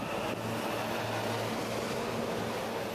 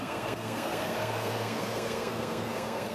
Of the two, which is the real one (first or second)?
first